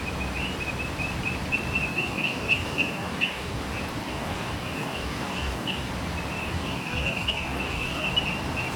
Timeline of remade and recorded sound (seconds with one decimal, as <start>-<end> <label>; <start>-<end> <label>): 0.0-1.9 recorded; 1.9-3.6 remade; 3.6-4.0 recorded; 4.0-5.9 remade; 5.9-6.4 recorded; 6.4-8.1 remade; 8.1-8.8 recorded